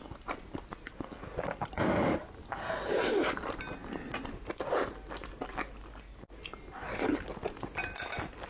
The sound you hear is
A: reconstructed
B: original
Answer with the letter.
B